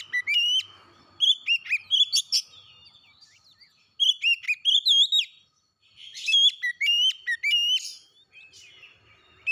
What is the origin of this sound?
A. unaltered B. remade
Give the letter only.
A